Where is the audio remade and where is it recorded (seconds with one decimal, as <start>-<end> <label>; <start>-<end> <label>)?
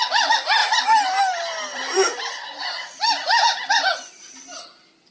0.0-0.6 recorded; 0.6-3.7 remade; 3.7-5.1 recorded